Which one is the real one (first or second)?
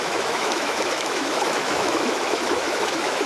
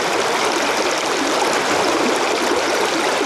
second